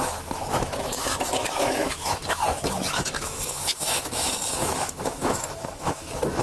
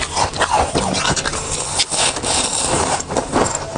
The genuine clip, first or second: second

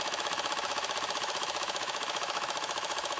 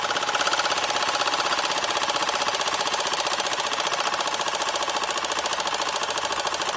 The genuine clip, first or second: second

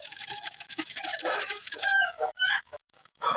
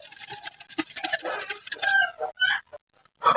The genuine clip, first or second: second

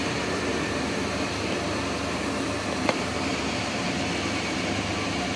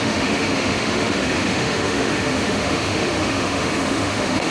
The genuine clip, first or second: first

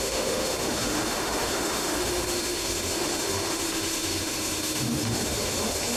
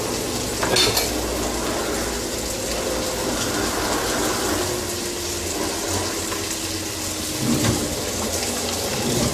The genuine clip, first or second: second